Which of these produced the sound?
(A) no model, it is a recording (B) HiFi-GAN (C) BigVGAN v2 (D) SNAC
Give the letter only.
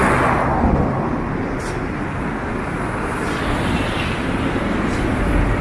A